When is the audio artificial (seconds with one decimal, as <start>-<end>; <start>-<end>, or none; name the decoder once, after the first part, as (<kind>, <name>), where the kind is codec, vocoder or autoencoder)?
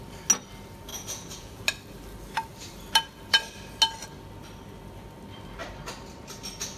0.9-1.6 (vocoder, Vocos)